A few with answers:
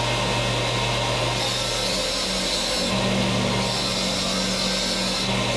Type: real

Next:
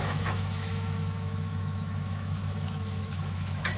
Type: fake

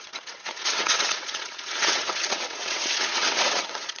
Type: fake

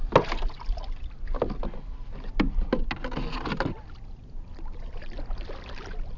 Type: real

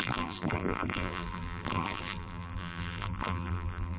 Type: fake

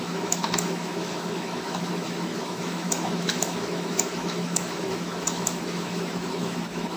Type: fake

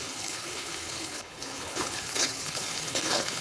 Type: fake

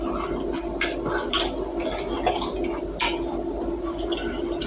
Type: real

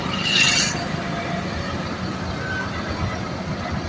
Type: real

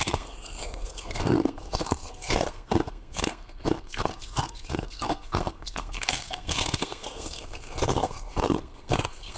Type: fake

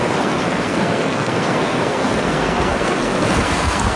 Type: fake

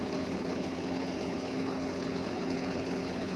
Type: fake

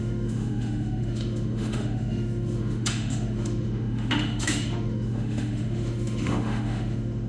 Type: fake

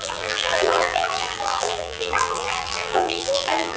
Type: fake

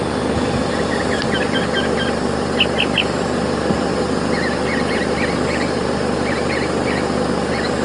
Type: real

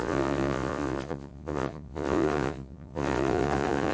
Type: fake